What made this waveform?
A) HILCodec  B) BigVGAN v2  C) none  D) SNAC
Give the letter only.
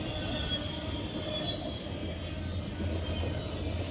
C